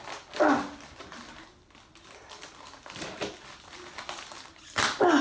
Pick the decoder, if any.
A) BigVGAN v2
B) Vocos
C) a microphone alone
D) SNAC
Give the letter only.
C